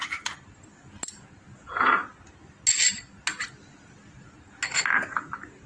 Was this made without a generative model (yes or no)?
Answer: yes